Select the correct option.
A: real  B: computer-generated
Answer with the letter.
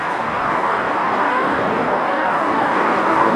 B